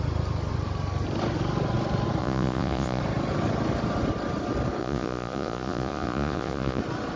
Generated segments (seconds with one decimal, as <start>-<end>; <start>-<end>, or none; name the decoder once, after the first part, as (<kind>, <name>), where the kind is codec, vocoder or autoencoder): 2.2-3.0 (vocoder, Vocos); 4.8-6.8